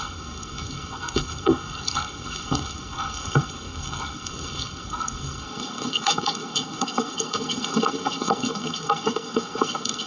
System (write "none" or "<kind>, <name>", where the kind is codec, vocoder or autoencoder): codec, SNAC